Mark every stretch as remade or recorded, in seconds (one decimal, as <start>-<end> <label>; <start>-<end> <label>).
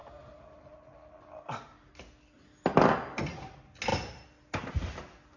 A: 0.0-5.4 recorded